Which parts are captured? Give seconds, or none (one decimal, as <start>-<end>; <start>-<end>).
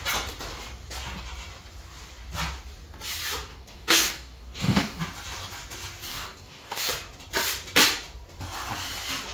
0.0-3.5; 5.0-6.1; 6.9-9.3